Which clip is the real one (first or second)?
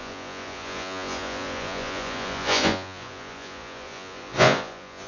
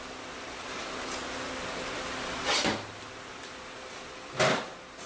second